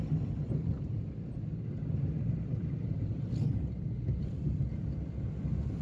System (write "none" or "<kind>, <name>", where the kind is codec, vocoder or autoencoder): none